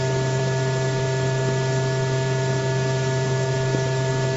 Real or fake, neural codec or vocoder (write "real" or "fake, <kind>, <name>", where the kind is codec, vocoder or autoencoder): real